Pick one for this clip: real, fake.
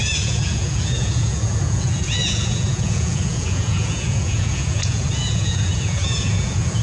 fake